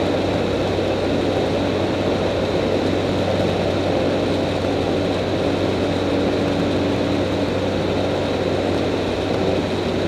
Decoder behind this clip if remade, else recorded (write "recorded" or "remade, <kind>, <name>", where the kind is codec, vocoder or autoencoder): recorded